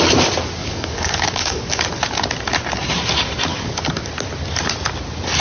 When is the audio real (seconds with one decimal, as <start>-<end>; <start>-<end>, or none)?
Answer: 0.0-0.6; 1.8-3.5; 4.1-5.4